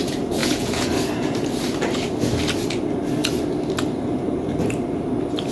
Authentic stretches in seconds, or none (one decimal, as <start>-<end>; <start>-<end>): 0.0-0.4; 0.9-5.5